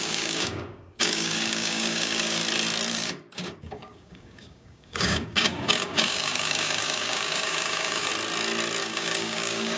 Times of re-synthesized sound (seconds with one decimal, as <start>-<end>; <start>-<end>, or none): 0.0-2.4; 2.9-8.1; 8.8-9.8